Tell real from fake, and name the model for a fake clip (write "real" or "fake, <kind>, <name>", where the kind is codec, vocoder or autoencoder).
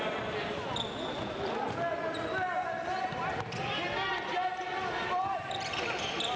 real